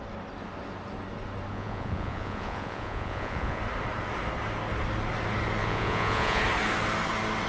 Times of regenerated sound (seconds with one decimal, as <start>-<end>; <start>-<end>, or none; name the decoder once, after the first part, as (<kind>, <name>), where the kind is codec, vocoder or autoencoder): 1.5-3.6 (vocoder, Vocos); 5.6-6.4